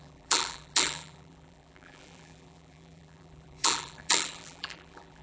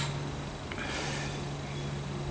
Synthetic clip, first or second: first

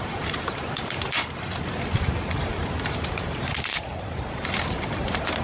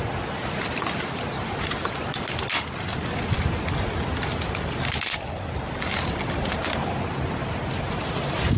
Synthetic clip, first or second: first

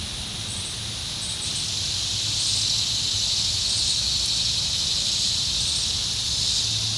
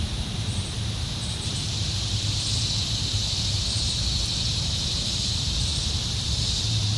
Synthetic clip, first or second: second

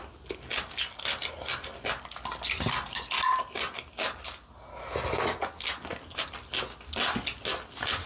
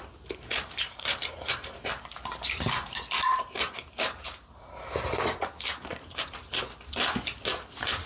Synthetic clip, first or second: second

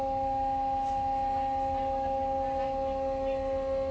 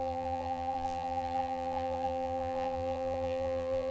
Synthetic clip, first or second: second